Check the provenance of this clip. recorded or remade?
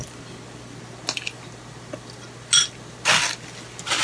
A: recorded